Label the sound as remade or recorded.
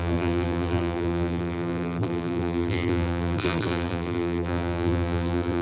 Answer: remade